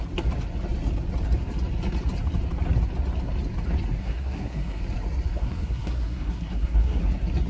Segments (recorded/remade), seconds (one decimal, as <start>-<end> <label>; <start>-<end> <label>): 0.0-4.0 recorded; 4.0-4.8 remade; 4.8-5.4 recorded; 5.4-7.0 remade; 7.0-7.5 recorded